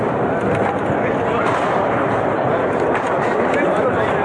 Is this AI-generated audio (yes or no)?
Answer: no